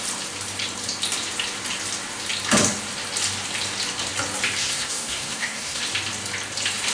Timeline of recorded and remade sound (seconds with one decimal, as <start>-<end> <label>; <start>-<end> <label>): 0.0-4.6 recorded; 4.6-5.8 remade; 5.8-6.9 recorded